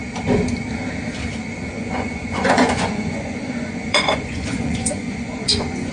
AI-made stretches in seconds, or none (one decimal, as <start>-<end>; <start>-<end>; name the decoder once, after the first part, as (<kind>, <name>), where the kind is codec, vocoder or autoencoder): 1.7-5.9 (vocoder, Vocos)